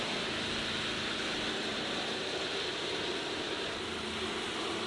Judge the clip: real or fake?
real